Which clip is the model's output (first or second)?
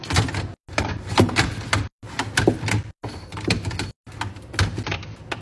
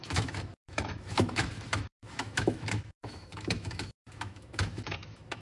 second